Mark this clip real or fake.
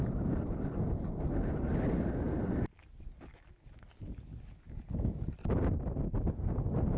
real